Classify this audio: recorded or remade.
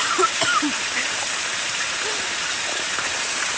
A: remade